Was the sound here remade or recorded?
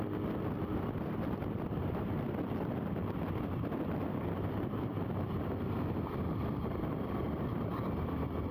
remade